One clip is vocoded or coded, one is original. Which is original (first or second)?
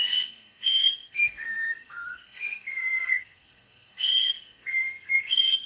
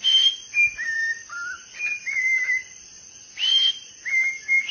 second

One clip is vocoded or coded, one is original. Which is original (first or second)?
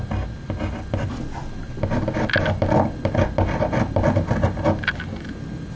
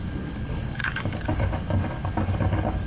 first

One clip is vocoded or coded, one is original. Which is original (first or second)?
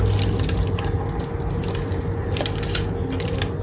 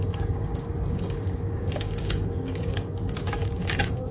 first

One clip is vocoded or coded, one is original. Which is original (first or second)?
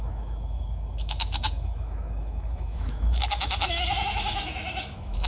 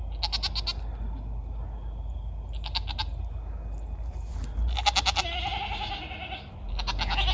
second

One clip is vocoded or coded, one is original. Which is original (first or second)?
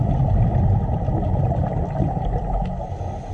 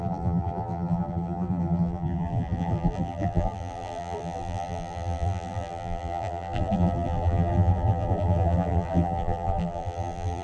first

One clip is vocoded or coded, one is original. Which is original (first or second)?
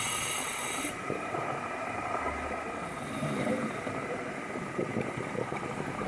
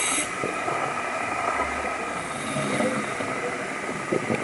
second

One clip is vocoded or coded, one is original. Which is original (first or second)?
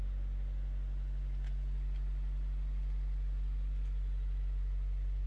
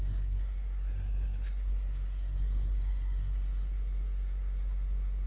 first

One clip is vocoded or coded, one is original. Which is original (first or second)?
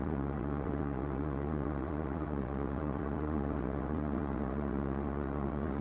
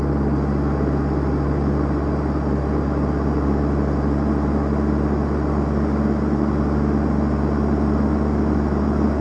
second